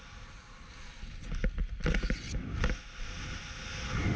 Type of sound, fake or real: real